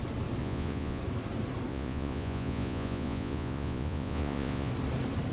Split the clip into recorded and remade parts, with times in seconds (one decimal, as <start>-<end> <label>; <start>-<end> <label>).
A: 0.0-0.4 recorded; 0.4-1.0 remade; 1.0-1.7 recorded; 1.7-4.7 remade; 4.7-5.3 recorded